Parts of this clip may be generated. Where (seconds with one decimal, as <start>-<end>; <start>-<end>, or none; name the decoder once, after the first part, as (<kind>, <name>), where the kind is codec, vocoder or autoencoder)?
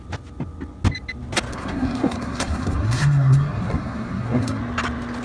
1.5-4.6 (codec, SNAC)